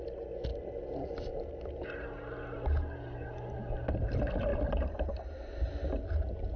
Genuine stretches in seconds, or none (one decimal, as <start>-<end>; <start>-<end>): 0.0-6.6